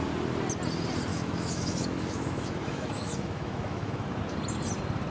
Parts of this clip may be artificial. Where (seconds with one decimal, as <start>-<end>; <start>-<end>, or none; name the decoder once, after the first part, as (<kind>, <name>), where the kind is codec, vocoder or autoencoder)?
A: 1.1-4.2 (autoencoder, DAC-VAE)